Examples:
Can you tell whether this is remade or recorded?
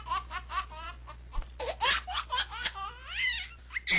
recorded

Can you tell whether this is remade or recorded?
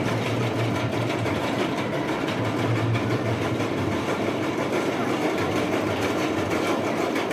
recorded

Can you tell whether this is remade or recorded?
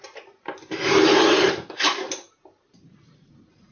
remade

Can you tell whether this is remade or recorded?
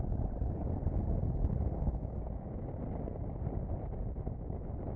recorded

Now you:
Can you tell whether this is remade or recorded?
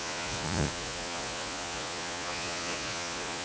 remade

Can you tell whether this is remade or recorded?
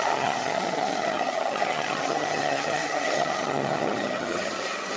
remade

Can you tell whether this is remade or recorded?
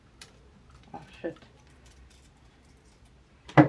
recorded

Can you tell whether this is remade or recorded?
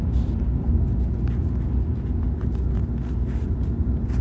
recorded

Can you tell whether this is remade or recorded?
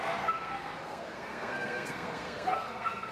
remade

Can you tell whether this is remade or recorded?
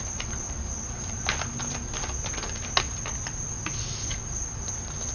recorded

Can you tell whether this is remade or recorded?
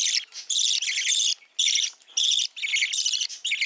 recorded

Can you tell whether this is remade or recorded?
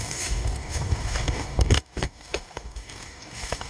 remade